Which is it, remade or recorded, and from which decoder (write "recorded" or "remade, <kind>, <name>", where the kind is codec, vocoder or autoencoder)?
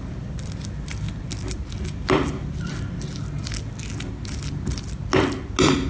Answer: recorded